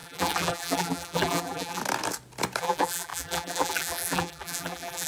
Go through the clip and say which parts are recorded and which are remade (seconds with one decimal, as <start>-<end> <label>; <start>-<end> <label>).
0.0-1.8 remade; 1.8-2.6 recorded; 2.6-5.1 remade